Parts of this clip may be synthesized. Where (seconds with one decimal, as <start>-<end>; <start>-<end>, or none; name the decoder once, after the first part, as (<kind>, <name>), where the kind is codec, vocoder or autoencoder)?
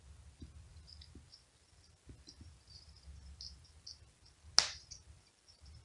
none